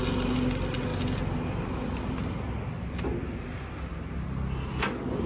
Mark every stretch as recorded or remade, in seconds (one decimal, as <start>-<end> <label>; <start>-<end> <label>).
0.0-5.3 recorded